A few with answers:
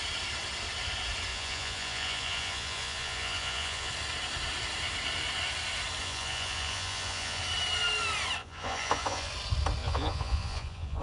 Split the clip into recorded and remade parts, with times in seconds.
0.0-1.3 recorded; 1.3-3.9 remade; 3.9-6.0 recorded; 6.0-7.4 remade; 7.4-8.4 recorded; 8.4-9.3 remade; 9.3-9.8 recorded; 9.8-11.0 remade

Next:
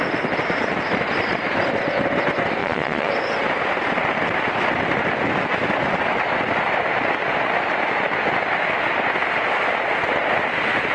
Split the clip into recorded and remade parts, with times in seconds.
0.0-2.6 recorded; 2.6-3.1 remade; 3.1-10.9 recorded

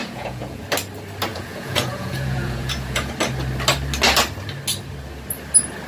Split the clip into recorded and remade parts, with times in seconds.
0.0-0.6 remade; 0.6-1.3 recorded; 1.3-3.1 remade; 3.1-5.9 recorded